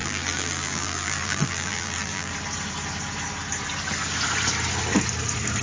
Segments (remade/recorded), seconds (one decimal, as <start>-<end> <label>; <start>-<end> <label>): 0.0-2.3 remade; 2.3-5.6 recorded